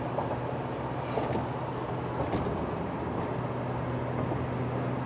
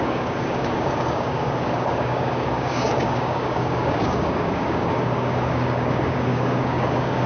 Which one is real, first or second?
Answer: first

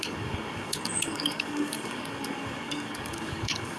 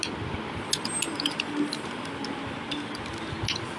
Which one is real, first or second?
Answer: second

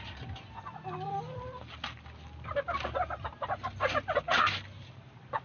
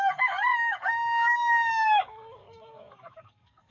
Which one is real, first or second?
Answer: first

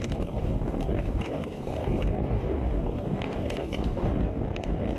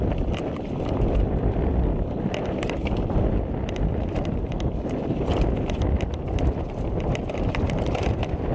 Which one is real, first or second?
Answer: second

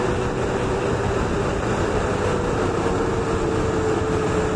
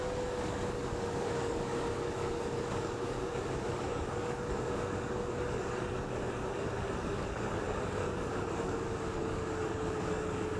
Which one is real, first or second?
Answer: first